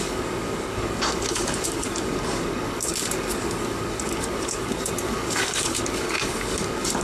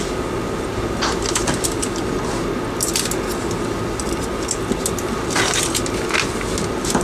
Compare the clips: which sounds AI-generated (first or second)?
first